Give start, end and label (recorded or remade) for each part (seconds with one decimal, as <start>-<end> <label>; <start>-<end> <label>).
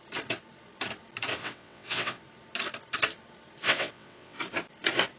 0.0-1.3 recorded; 1.3-2.2 remade; 2.2-3.6 recorded; 3.6-4.4 remade; 4.4-5.2 recorded